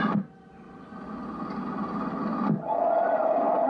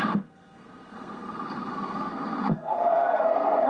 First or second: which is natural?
first